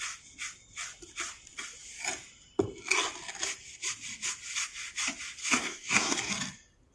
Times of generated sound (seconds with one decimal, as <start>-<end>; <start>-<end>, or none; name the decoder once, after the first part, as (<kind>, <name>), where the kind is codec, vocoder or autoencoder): 5.4-6.3 (codec, SNAC)